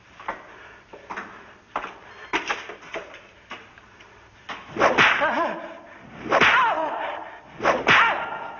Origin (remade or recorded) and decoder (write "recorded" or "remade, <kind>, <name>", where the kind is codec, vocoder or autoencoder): remade, vocoder, BigVGAN v2